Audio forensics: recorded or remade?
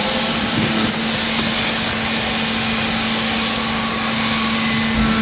recorded